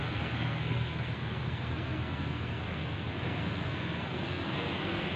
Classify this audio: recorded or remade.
remade